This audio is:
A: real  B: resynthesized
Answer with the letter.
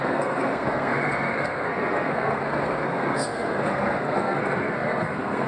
B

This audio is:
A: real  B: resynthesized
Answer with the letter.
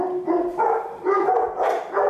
A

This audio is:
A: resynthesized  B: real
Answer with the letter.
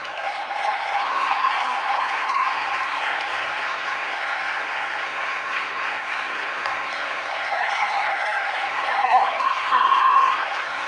A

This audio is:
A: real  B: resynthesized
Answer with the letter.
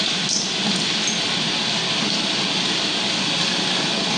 A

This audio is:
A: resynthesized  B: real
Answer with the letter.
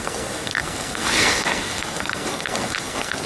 A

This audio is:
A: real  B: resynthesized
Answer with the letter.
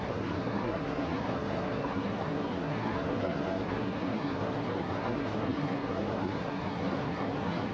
B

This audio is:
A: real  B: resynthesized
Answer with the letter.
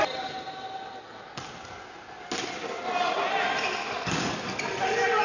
A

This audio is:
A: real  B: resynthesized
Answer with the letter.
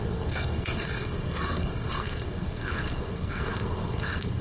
B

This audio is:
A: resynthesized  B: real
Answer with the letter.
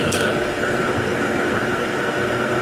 A